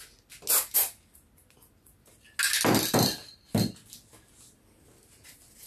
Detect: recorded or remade recorded